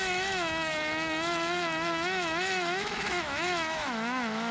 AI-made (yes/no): yes